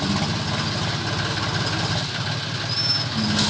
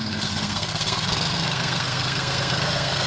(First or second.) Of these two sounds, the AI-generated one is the second